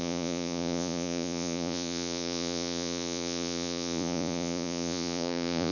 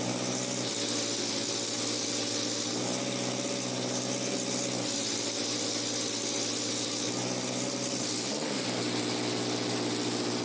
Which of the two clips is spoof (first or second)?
first